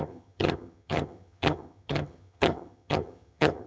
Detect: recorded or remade remade